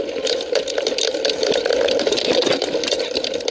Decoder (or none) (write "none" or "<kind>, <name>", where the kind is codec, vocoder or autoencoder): vocoder, BigVGAN v2